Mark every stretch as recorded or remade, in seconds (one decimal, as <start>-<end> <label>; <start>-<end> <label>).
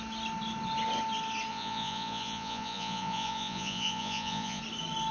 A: 0.0-1.5 recorded; 1.5-4.6 remade; 4.6-5.1 recorded